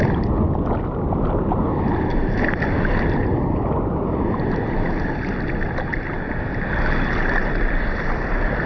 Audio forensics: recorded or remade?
recorded